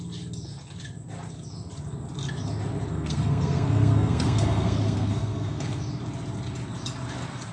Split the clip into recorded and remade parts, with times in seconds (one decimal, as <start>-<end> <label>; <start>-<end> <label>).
0.0-2.9 recorded; 2.9-5.8 remade; 5.8-7.5 recorded